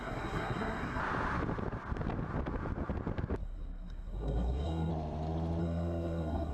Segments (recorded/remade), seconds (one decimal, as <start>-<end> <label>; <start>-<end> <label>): 0.0-1.0 remade; 1.0-3.4 recorded; 3.4-4.9 remade; 4.9-5.6 recorded; 5.6-6.5 remade